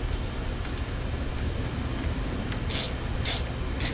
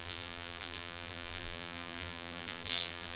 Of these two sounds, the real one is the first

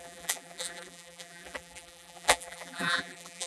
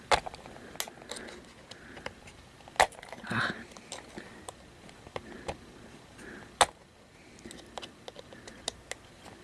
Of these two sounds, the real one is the second